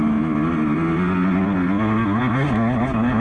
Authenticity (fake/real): real